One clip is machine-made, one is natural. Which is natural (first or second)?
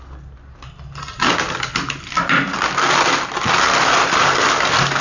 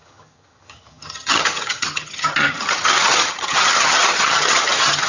first